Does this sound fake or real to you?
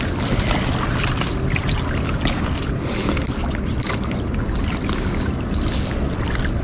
real